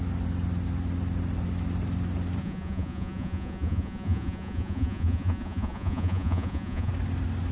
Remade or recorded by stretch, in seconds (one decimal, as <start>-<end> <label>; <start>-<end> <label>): 0.0-2.4 recorded; 2.4-6.9 remade; 6.9-7.5 recorded